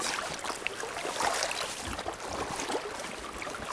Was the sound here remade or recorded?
recorded